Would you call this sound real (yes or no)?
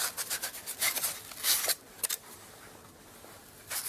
yes